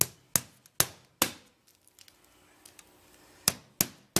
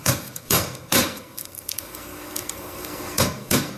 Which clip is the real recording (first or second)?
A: first